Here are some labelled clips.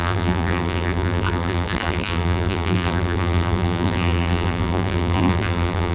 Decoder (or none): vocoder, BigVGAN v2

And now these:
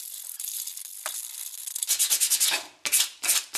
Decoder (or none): none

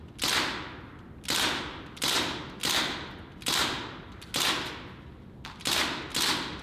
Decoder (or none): none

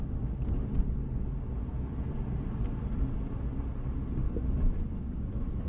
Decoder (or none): none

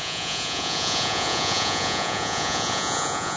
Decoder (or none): vocoder, Vocos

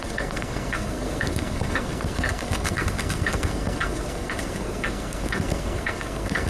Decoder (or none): codec, SNAC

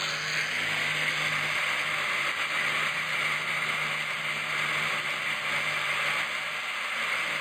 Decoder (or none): none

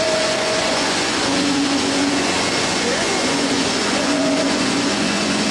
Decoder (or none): vocoder, Vocos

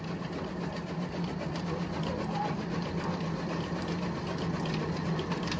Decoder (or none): none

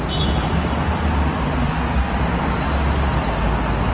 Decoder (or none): none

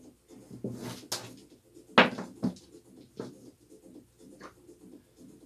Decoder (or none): none